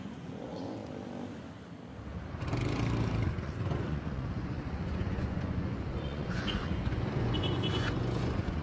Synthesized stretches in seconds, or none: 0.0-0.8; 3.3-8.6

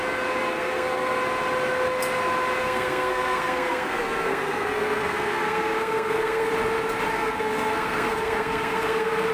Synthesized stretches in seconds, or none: 0.4-1.2; 2.6-6.5; 7.1-9.3

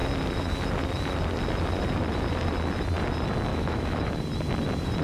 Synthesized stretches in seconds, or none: 3.5-4.2

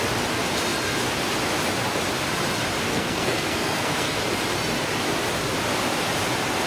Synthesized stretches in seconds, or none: 2.9-4.2

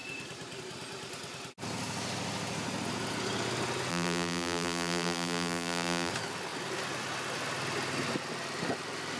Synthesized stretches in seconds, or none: 3.9-6.1